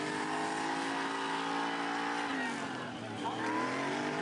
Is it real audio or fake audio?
real